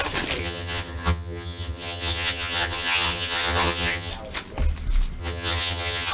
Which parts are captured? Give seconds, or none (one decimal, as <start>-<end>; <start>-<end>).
0.0-0.4; 4.1-5.2

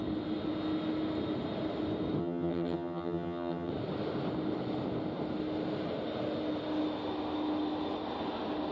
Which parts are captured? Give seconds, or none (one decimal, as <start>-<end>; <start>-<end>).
0.0-2.2; 3.7-8.7

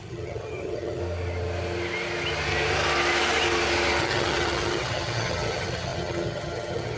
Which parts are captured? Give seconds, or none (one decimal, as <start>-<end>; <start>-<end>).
1.0-4.0

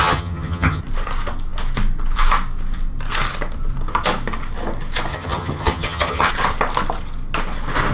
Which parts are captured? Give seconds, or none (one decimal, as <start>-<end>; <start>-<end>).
0.8-5.1; 6.3-7.9